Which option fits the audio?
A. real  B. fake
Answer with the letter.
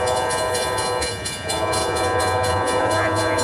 B